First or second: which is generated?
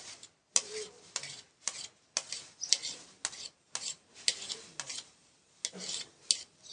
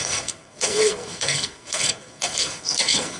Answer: second